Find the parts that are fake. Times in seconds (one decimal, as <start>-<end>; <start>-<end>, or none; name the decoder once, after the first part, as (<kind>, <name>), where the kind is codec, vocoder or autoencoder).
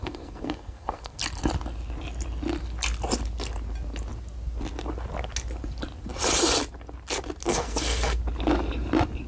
0.0-1.2 (codec, SNAC); 7.5-8.2